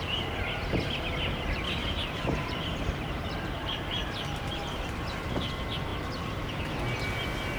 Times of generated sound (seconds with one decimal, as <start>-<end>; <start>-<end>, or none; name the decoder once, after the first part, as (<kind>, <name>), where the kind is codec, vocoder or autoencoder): 1.8-5.4 (vocoder, BigVGAN v2); 5.9-6.6